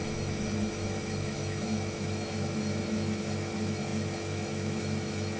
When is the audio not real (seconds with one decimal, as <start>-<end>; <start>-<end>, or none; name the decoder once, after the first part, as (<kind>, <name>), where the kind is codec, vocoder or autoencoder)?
0.0-5.4 (autoencoder, DAC-VAE)